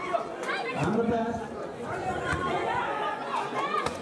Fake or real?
fake